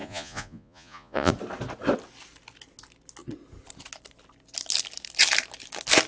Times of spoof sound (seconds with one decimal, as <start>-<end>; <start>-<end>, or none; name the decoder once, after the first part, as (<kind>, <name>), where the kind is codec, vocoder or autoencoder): 0.0-1.3 (vocoder, Vocos)